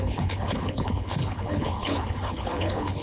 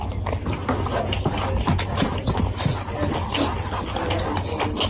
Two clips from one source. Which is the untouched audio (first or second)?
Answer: second